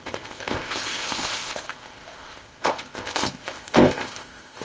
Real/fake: fake